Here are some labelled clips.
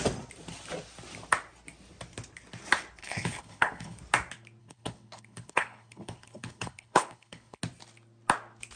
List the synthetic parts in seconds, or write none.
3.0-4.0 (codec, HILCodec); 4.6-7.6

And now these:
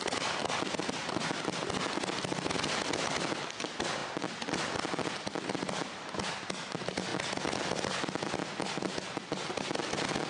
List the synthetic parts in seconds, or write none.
none

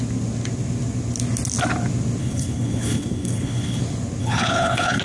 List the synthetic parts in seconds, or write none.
2.2-3.8 (codec, HILCodec); 4.2-5.0

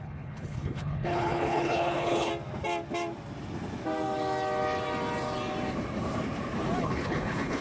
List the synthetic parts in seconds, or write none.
0.0-2.3 (codec, HILCodec); 6.8-7.6

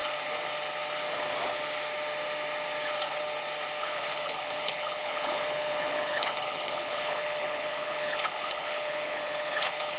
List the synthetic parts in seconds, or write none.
3.8-10.0 (codec, HILCodec)

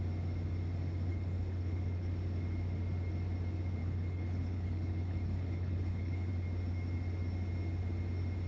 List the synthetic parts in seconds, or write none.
1.1-2.1 (codec, HILCodec); 3.8-6.3